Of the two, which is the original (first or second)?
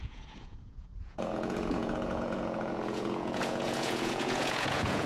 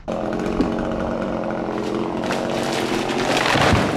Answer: second